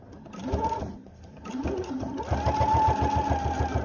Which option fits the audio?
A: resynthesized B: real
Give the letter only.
B